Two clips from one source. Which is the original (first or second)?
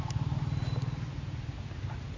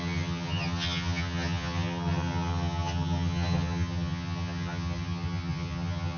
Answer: first